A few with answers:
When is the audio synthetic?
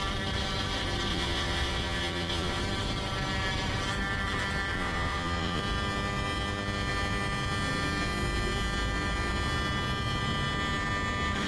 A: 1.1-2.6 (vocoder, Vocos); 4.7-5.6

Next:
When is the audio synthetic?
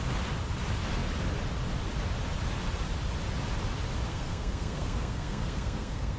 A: 4.1-6.2 (codec, SNAC)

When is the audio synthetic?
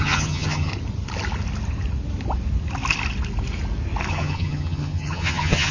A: 0.0-0.7 (vocoder, HiFi-GAN); 4.1-5.7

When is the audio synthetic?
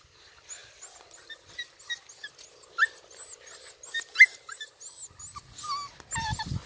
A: none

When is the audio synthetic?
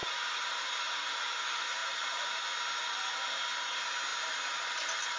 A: none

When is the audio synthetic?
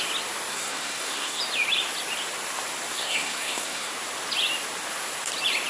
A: 0.5-1.4 (codec, SNAC); 2.9-3.9